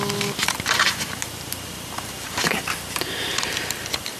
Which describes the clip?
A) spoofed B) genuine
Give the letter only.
B